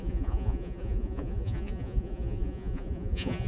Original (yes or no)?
no